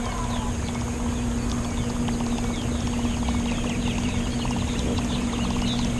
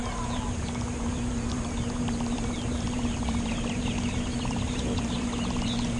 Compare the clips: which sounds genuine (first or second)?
first